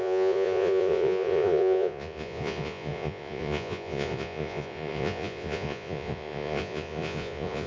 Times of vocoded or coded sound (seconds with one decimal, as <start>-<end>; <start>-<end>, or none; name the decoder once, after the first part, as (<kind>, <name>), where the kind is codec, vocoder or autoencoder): 0.0-7.7 (vocoder, Vocos)